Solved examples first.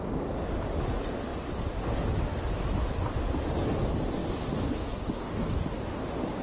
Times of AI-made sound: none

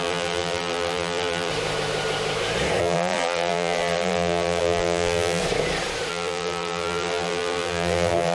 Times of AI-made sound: 0.0-1.5 (vocoder, BigVGAN v2); 2.8-5.4; 6.1-8.3

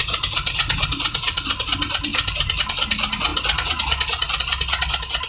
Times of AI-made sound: 0.0-0.9 (vocoder, BigVGAN v2)

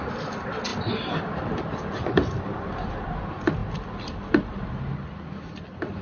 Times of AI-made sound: 0.7-3.2 (vocoder, BigVGAN v2)

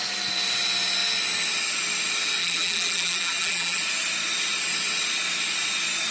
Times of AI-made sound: 2.4-3.8 (vocoder, BigVGAN v2)

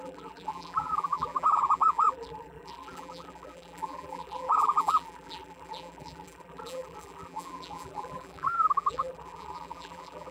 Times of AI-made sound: 0.0-10.3 (vocoder, BigVGAN v2)